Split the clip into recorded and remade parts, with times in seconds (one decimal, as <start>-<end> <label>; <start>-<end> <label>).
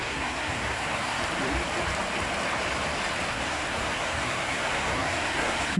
0.0-1.2 remade; 1.2-3.3 recorded; 3.3-5.8 remade